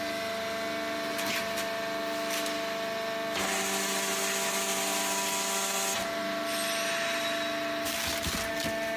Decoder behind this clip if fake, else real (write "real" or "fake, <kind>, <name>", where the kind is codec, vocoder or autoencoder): real